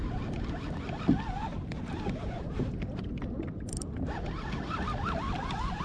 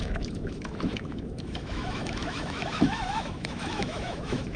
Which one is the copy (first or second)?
second